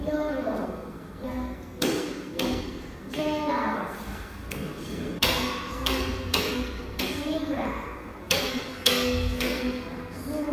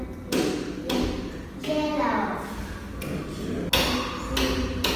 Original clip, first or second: second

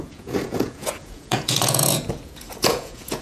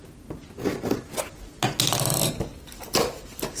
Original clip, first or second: second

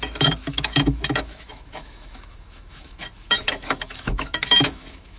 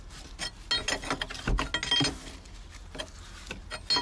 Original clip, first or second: second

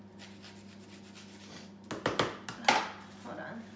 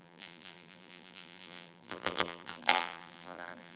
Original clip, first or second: first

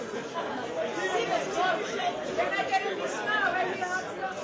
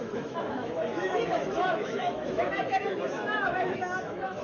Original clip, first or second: first